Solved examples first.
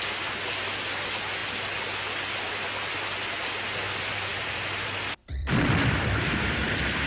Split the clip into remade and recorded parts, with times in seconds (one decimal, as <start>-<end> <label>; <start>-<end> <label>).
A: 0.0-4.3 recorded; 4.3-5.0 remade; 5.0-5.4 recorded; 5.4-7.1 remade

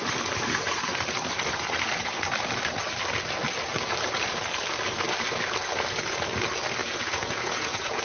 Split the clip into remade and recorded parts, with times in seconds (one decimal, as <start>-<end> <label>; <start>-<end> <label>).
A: 0.0-6.8 recorded; 6.8-8.0 remade

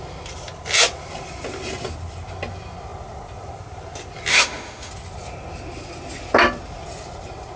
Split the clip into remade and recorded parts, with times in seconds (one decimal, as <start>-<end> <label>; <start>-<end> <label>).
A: 0.0-4.3 recorded; 4.3-4.9 remade; 4.9-7.6 recorded

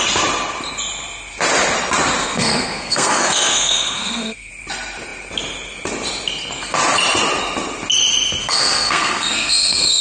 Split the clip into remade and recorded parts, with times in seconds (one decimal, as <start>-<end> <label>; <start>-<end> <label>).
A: 0.0-2.2 recorded; 2.2-4.5 remade; 4.5-8.4 recorded; 8.4-10.0 remade

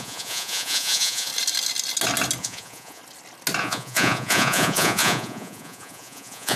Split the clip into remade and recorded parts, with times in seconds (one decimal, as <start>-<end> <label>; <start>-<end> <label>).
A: 0.0-1.3 remade; 1.3-2.4 recorded; 2.4-3.0 remade; 3.0-3.6 recorded; 3.6-6.6 remade

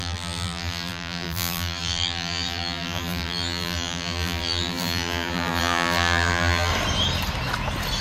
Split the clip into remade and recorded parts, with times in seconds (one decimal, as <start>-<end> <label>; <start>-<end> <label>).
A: 0.0-6.7 remade; 6.7-8.0 recorded

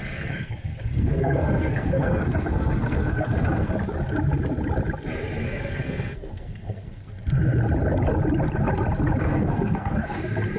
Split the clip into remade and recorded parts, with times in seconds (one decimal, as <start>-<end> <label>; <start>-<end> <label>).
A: 0.0-3.7 remade; 3.7-5.4 recorded; 5.4-7.1 remade; 7.1-9.2 recorded; 9.2-10.2 remade; 10.2-10.6 recorded

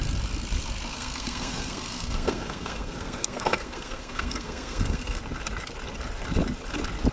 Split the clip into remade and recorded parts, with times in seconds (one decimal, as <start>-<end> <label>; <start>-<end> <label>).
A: 0.0-0.9 recorded; 0.9-5.2 remade; 5.2-7.1 recorded